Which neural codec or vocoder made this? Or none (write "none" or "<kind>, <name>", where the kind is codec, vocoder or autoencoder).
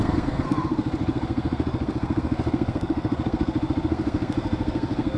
codec, SNAC